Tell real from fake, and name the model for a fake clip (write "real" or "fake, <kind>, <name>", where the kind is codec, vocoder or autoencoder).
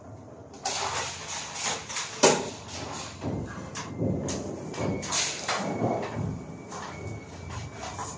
real